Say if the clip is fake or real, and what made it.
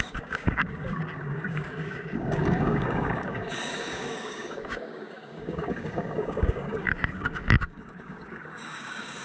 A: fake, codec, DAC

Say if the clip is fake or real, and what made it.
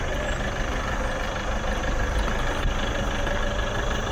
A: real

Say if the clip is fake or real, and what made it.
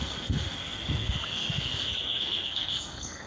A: fake, codec, SNAC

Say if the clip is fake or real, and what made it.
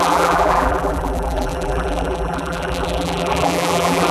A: fake, vocoder, BigVGAN v2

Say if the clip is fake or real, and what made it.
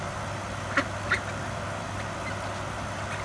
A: real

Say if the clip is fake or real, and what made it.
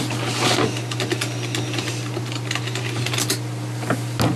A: real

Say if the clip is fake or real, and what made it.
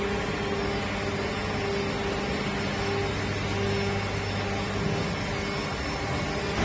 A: real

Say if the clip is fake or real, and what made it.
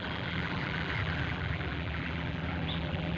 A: fake, vocoder, BigVGAN v2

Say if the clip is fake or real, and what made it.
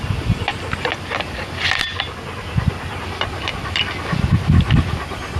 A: real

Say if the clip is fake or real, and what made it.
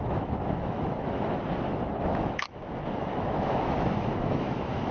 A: fake, autoencoder, DAC-VAE